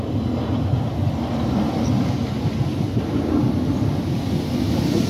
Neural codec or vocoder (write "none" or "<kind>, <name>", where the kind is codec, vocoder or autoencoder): none